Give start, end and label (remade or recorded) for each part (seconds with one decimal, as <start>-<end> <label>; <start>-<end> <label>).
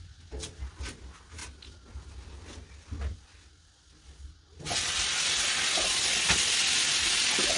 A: 0.0-7.6 recorded